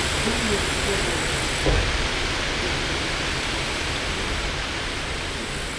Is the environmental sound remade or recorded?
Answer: recorded